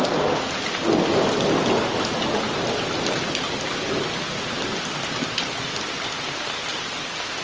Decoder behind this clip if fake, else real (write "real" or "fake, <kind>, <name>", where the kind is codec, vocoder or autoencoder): real